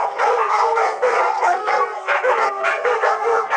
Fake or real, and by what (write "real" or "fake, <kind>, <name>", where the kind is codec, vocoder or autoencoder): fake, codec, SNAC